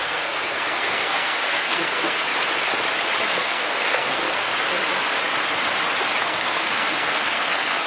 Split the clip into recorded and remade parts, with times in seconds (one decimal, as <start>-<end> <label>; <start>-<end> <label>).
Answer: 0.0-2.3 remade; 2.3-3.3 recorded; 3.3-4.5 remade; 4.5-6.2 recorded; 6.2-7.9 remade

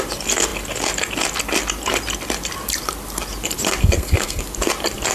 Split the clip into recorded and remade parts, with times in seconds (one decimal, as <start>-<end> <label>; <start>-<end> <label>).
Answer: 0.0-3.8 recorded; 3.8-4.4 remade; 4.4-5.1 recorded